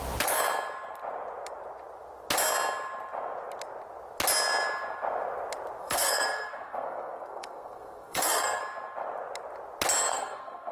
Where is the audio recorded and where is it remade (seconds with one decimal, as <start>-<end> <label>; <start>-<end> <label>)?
0.0-5.8 recorded; 5.8-8.6 remade; 8.6-10.1 recorded; 10.1-10.7 remade